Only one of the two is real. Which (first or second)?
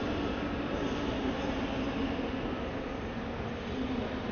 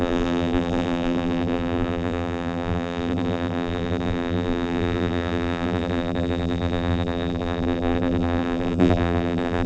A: first